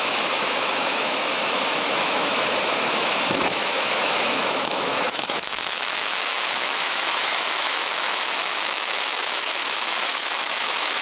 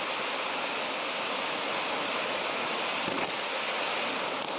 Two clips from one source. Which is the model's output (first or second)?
first